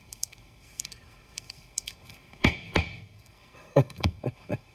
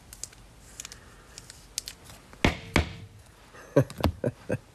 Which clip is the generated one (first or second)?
first